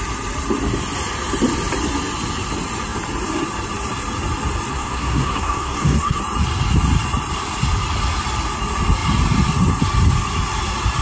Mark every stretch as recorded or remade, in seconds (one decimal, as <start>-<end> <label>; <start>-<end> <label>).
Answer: 0.0-4.7 recorded; 4.7-6.2 remade; 6.2-11.0 recorded